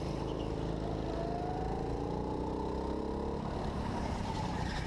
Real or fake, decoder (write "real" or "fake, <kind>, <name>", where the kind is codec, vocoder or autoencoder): real